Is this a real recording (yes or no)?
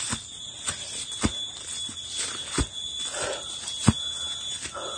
yes